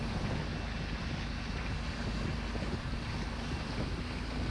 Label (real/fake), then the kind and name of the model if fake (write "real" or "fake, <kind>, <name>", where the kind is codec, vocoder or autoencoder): real